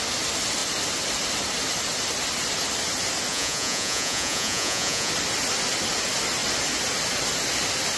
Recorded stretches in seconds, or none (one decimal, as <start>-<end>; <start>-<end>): 0.0-3.3; 5.1-8.0